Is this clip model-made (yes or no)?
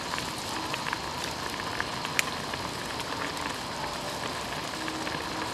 no